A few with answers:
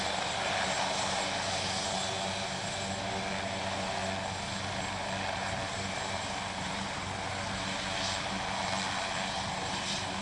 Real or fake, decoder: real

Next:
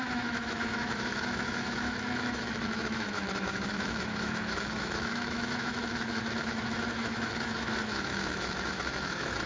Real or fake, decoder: fake, autoencoder, DAC-VAE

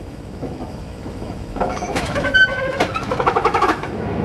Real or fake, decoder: fake, autoencoder, DAC-VAE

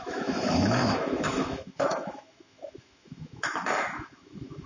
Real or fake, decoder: fake, autoencoder, DAC-VAE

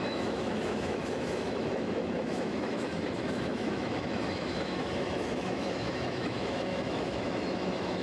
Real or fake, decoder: fake, autoencoder, DAC-VAE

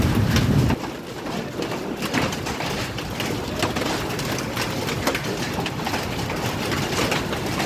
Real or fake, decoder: real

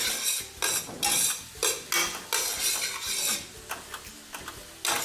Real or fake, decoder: real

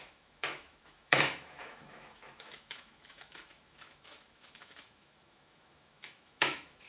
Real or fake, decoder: fake, autoencoder, DAC-VAE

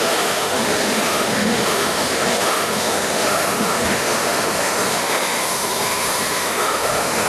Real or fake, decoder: fake, autoencoder, DAC-VAE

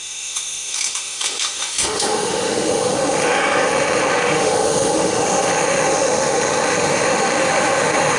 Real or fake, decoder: fake, autoencoder, DAC-VAE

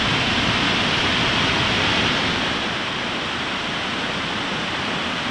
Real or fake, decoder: real